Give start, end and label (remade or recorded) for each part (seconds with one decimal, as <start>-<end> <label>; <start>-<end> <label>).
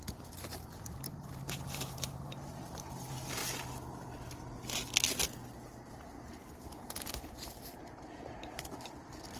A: 0.0-3.4 remade; 3.4-6.5 recorded; 6.5-9.4 remade